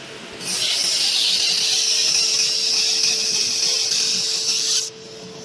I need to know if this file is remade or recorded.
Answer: recorded